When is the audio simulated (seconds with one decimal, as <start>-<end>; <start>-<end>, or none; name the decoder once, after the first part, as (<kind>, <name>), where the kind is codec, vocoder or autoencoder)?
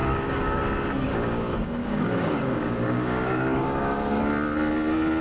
0.0-0.6 (codec, DAC); 1.1-4.2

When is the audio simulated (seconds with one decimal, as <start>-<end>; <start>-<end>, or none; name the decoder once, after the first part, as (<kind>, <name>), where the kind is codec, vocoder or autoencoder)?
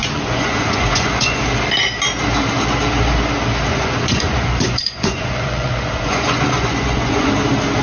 0.0-1.4 (vocoder, Vocos); 3.7-7.3